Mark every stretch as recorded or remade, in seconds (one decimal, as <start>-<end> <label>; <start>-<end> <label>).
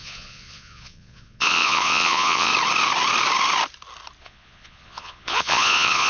0.0-2.5 remade; 2.5-4.2 recorded; 4.2-6.1 remade